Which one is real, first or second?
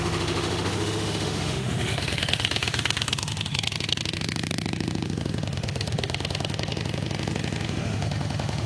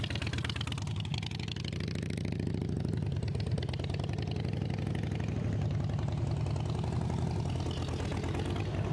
second